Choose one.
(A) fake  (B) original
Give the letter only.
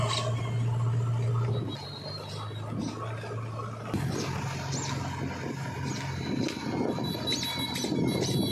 B